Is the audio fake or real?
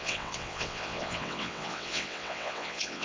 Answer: fake